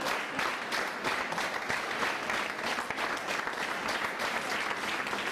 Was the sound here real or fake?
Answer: real